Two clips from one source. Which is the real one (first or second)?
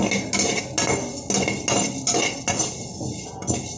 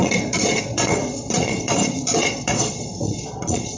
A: first